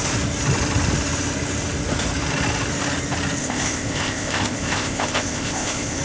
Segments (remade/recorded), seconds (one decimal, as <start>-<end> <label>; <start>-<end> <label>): 0.0-3.4 recorded; 3.4-6.0 remade